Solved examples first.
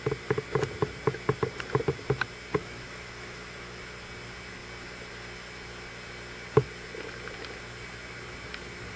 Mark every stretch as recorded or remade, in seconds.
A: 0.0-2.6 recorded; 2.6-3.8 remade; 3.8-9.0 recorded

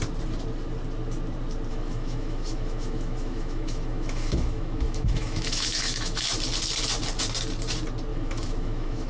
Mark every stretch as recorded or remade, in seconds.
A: 0.0-1.7 recorded; 1.7-6.2 remade; 6.2-8.1 recorded; 8.1-9.1 remade

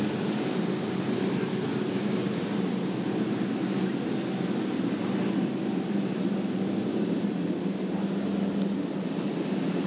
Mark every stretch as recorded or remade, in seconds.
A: 0.0-9.9 recorded